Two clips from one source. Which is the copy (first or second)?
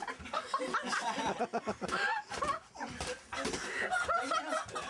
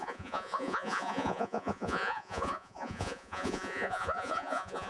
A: second